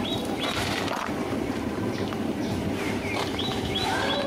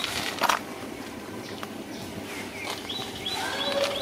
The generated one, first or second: first